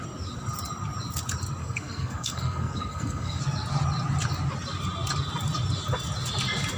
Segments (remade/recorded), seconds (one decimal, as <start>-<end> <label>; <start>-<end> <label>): 0.0-1.6 recorded; 1.6-3.4 remade; 3.4-6.8 recorded